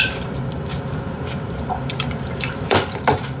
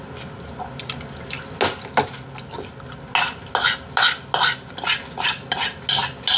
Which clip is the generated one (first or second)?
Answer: first